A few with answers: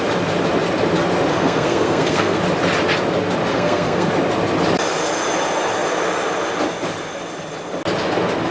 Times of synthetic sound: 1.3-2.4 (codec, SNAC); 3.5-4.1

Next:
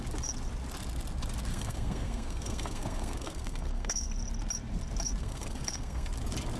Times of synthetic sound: 1.5-4.1 (codec, SNAC); 5.2-6.1

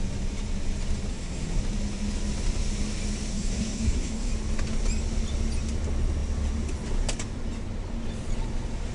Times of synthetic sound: 1.1-1.6 (codec, SNAC); 3.3-4.3

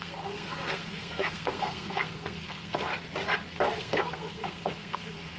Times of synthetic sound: 0.0-2.9 (codec, SNAC); 3.8-5.4

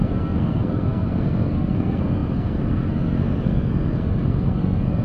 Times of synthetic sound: 0.0-5.0 (codec, SNAC)

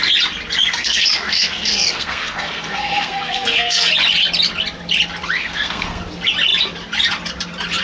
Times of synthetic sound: 0.6-3.9 (codec, SNAC); 5.4-6.0

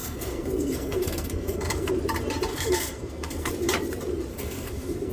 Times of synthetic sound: 0.0-1.9 (codec, SNAC); 2.5-3.5; 4.3-5.1

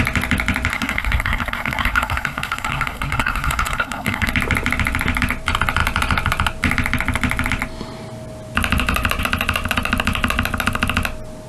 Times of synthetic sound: 0.7-4.3 (codec, SNAC)